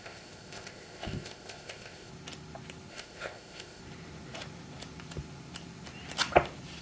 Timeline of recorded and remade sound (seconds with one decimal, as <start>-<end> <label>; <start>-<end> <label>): 0.0-2.1 remade; 2.1-2.9 recorded; 2.9-3.8 remade; 3.8-6.8 recorded